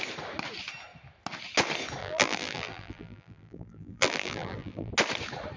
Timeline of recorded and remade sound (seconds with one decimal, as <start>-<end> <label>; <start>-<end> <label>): 0.0-2.0 recorded; 2.0-4.9 remade; 4.9-5.6 recorded